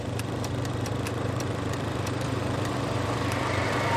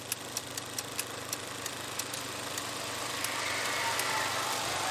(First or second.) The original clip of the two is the second